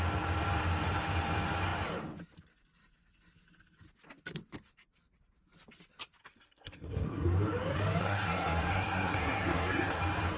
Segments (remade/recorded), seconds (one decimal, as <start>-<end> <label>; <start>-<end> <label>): 0.0-6.2 recorded; 6.2-7.3 remade; 7.3-8.0 recorded; 8.0-10.0 remade; 10.0-10.4 recorded